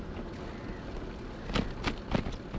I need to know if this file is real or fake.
real